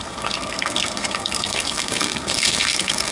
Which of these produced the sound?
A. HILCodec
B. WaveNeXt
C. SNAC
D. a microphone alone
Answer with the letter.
C